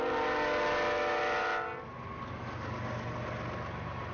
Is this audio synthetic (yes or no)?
no